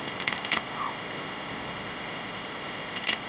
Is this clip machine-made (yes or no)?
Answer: yes